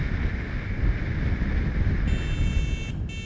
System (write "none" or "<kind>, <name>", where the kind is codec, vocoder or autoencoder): none